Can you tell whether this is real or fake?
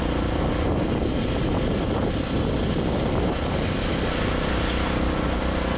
real